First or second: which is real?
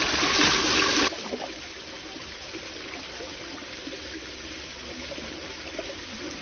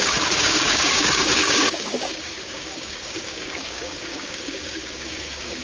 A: first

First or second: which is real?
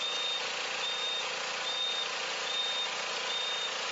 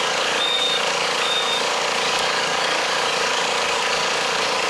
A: first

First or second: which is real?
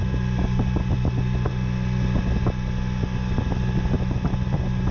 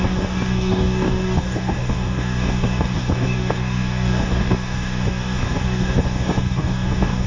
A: first